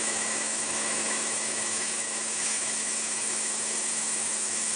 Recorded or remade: remade